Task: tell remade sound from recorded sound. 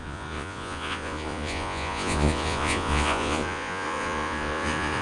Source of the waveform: remade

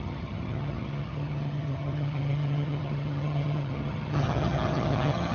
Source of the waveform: remade